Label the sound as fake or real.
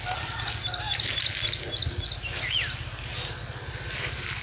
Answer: real